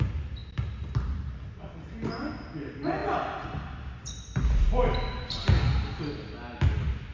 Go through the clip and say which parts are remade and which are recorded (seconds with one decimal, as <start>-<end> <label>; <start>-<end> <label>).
0.0-7.1 recorded